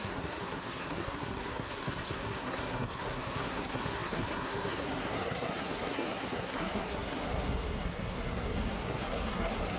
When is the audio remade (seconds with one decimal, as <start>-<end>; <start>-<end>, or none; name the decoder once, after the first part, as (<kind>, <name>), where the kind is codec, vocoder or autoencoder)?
0.0-9.8 (codec, SNAC)